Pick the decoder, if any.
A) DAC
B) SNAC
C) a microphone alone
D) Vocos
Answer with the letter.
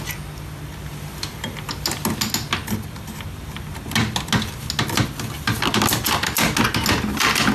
C